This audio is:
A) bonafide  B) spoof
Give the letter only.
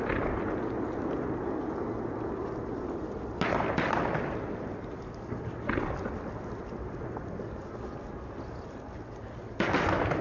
A